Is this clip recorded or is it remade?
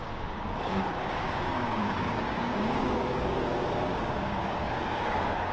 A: remade